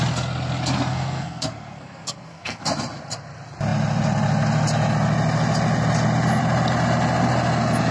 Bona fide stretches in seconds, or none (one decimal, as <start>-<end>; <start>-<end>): 0.0-0.9; 2.6-7.9